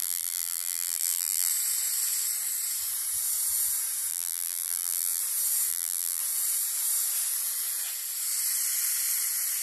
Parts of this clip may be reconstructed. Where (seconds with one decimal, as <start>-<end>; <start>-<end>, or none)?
0.0-1.5; 4.1-5.2; 5.7-6.2